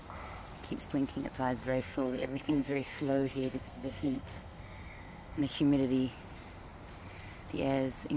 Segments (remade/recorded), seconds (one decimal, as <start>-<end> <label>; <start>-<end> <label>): 0.0-1.6 recorded; 1.6-5.4 remade; 5.4-8.2 recorded